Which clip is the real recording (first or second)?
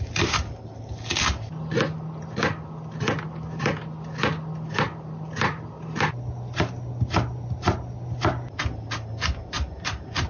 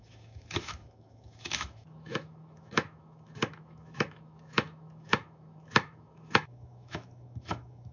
first